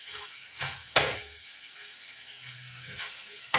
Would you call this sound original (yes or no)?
no